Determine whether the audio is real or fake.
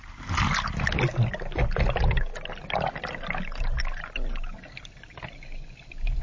real